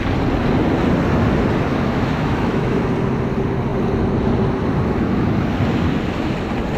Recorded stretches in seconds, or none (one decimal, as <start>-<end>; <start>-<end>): 0.0-1.7; 2.8-6.8